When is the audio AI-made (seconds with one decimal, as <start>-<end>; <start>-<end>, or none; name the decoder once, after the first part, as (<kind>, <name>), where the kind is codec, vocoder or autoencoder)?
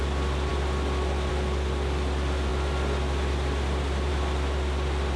none